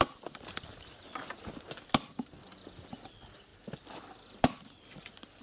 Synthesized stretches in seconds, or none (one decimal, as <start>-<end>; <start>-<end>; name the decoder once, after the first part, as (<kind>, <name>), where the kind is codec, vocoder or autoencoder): none